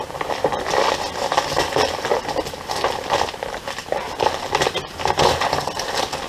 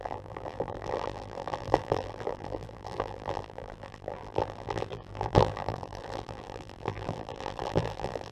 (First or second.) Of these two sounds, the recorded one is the first